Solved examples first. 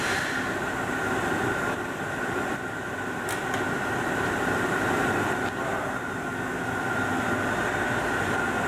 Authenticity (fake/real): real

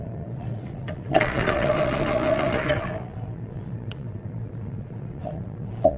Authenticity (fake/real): fake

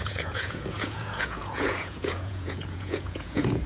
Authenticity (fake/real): fake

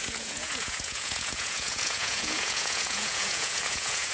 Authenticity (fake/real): fake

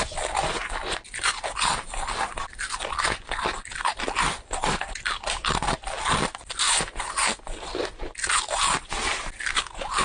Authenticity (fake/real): real